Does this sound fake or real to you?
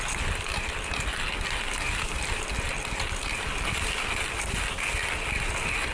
real